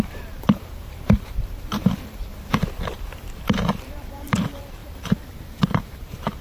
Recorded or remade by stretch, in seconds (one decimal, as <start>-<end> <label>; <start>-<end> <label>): 0.0-2.3 remade; 2.3-3.3 recorded; 3.3-6.4 remade